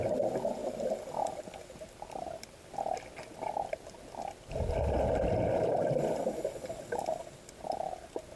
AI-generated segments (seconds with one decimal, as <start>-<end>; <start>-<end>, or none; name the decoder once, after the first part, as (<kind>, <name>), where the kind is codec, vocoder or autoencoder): none